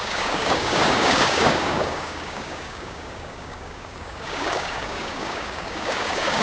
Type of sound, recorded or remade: remade